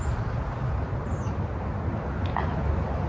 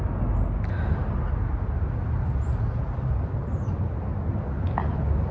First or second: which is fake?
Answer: first